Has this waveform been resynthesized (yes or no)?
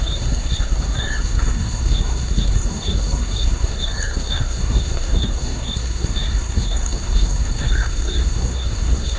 yes